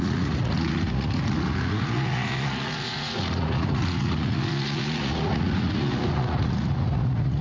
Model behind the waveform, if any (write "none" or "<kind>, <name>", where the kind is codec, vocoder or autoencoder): vocoder, Vocos